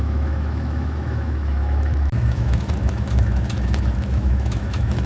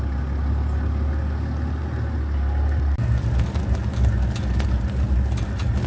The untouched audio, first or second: second